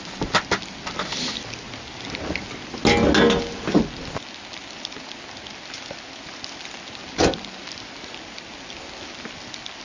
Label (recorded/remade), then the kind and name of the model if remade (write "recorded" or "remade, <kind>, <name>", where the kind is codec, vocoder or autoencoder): recorded